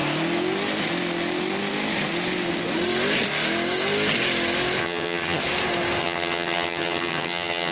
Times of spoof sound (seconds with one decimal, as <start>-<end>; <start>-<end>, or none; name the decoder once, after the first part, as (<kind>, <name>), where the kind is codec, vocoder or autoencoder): 4.8-5.4 (vocoder, HiFi-GAN); 6.0-7.7